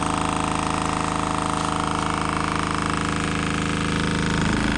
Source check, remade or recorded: recorded